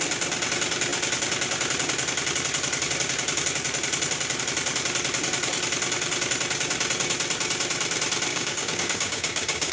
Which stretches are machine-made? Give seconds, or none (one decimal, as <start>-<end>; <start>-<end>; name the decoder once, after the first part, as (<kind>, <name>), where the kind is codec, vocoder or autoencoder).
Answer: 8.3-9.7 (codec, DAC)